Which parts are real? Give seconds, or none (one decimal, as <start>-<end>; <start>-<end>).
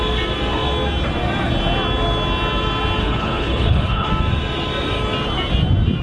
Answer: 0.0-3.0; 4.1-6.0